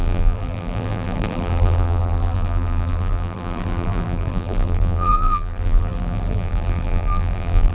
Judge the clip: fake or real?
fake